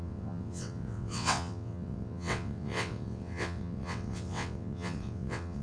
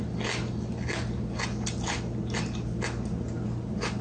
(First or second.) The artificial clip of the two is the first